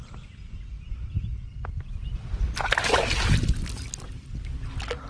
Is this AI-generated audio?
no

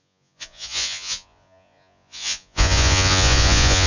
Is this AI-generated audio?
yes